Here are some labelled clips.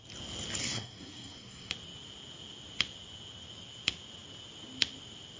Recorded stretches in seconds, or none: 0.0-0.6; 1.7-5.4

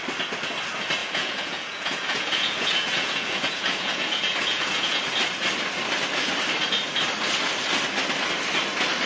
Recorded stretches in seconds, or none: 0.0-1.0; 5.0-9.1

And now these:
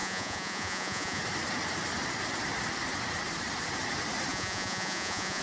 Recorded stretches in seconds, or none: 1.2-4.3